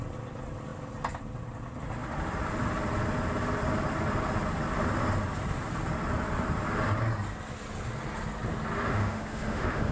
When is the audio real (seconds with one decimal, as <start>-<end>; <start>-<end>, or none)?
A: 0.0-8.9